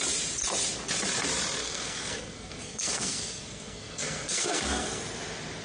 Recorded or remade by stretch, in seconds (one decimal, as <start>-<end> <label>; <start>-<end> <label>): 0.0-1.6 recorded; 1.6-5.0 remade; 5.0-5.6 recorded